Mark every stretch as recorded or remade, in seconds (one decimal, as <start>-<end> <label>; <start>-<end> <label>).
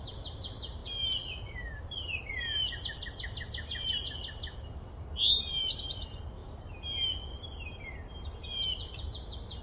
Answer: 0.0-9.6 recorded